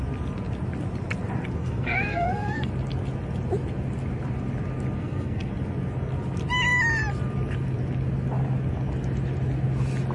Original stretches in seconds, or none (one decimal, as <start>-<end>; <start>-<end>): 0.0-1.6; 2.7-5.0; 5.5-10.1